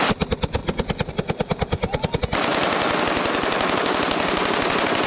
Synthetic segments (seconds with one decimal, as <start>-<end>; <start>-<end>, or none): none